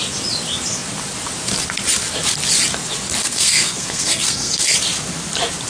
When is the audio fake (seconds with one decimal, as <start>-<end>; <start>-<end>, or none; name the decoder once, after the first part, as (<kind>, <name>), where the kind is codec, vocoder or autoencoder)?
3.2-4.7 (codec, SNAC)